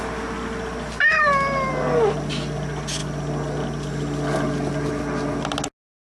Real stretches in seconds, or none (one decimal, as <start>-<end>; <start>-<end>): 0.0-6.0